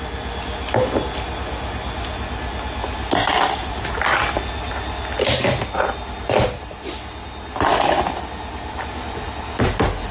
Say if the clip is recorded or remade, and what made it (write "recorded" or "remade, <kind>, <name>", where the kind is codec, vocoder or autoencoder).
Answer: recorded